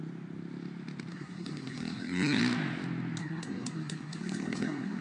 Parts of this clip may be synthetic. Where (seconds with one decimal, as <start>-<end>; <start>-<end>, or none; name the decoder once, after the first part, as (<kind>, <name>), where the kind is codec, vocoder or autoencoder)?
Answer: 1.1-2.4 (codec, SNAC); 3.2-5.0